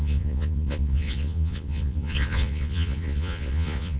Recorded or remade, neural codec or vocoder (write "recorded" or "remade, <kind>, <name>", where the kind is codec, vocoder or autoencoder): remade, vocoder, Vocos